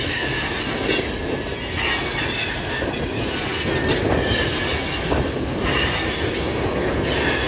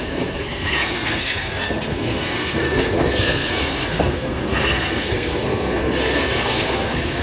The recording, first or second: first